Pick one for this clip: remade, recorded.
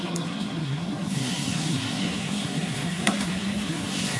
remade